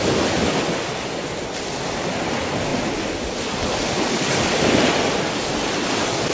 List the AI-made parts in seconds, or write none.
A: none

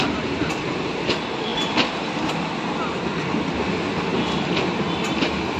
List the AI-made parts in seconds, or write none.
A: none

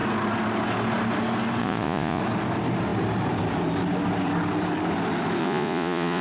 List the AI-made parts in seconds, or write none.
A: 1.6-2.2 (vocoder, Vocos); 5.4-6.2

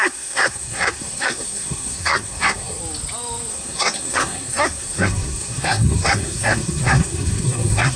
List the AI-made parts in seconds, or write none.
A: 0.0-2.8 (codec, SNAC); 3.5-8.0